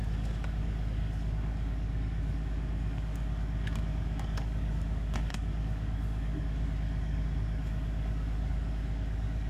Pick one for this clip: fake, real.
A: fake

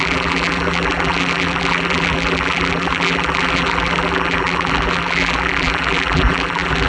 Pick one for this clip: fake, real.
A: fake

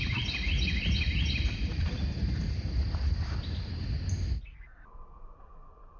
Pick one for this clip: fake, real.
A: real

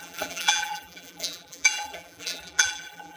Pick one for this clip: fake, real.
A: fake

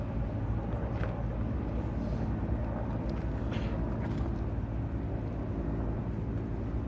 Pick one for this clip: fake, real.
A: real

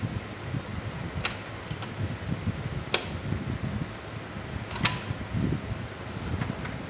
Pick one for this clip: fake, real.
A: real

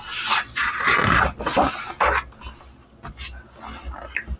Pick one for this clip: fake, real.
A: real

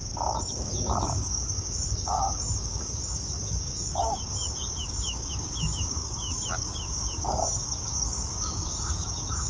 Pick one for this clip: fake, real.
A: fake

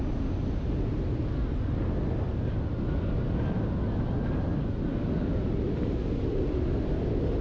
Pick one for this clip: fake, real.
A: real